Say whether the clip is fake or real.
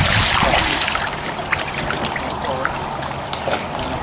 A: real